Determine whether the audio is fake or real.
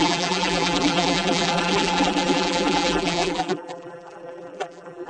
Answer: fake